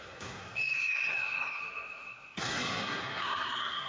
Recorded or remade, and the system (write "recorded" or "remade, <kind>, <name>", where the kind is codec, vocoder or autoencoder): remade, codec, SNAC